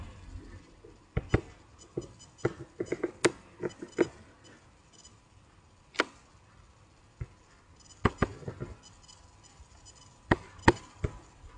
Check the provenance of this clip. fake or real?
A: real